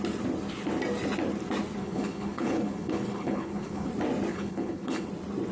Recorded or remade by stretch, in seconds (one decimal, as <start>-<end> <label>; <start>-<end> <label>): 0.0-1.8 recorded; 1.8-3.9 remade; 3.9-4.3 recorded; 4.3-5.1 remade; 5.1-5.5 recorded

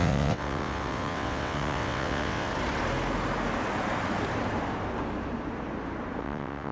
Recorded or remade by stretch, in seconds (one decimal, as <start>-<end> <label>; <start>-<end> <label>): 0.0-2.5 remade; 2.5-6.2 recorded; 6.2-6.7 remade

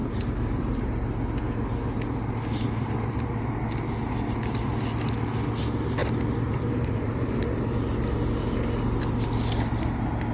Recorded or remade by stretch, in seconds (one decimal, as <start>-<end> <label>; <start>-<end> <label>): 0.0-0.8 remade; 0.8-6.0 recorded; 6.0-7.4 remade; 7.4-10.3 recorded

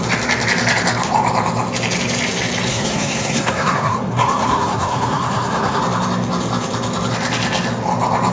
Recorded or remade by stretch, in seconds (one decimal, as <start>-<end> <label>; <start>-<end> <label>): 0.0-2.7 recorded; 2.7-5.8 remade; 5.8-8.3 recorded

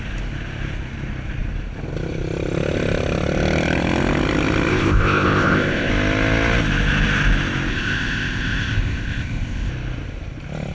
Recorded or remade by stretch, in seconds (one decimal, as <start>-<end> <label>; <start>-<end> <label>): 0.0-4.7 recorded; 4.7-5.9 remade; 5.9-7.7 recorded; 7.7-9.7 remade; 9.7-10.7 recorded

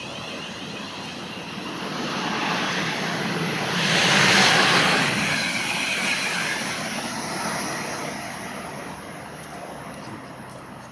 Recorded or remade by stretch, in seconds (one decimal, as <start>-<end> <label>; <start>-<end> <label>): 0.0-4.0 recorded; 4.0-4.5 remade; 4.5-10.9 recorded

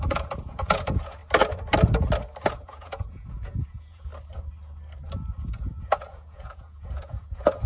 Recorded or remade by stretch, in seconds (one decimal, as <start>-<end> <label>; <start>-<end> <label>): 0.0-1.2 remade; 1.2-2.5 recorded; 2.5-4.1 remade; 4.1-5.4 recorded; 5.4-7.7 remade

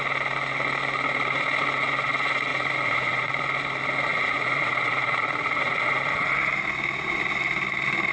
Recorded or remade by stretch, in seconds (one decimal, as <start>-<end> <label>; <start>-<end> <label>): 0.0-2.5 recorded; 2.5-3.3 remade; 3.3-4.1 recorded; 4.1-5.9 remade; 5.9-8.1 recorded